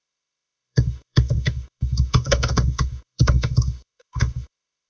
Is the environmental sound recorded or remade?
remade